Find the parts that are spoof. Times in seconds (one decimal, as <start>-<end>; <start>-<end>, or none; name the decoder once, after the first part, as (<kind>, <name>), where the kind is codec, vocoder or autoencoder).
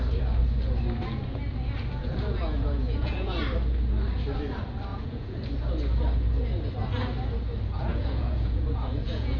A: 2.0-3.4 (vocoder, Vocos); 4.9-5.4; 7.9-9.4